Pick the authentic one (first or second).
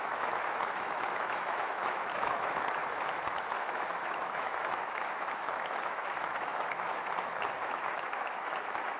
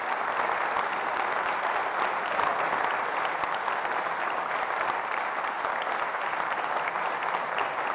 second